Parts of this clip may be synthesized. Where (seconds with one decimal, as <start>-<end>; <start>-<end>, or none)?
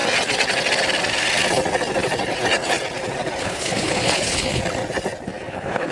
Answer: 3.4-4.6; 5.5-5.9